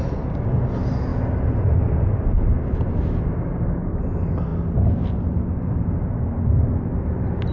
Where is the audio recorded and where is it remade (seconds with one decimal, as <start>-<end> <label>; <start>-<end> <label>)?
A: 0.0-7.5 recorded